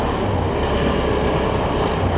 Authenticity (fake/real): real